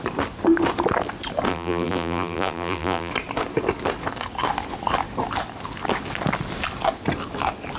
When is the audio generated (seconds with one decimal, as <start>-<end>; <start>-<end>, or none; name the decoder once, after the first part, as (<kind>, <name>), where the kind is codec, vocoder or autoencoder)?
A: 1.5-3.1 (vocoder, BigVGAN v2)